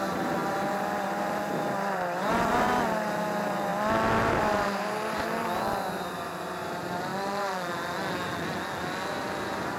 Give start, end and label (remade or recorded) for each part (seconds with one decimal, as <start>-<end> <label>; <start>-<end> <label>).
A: 0.0-3.7 remade; 3.7-4.3 recorded; 4.3-7.1 remade; 7.1-9.1 recorded; 9.1-9.8 remade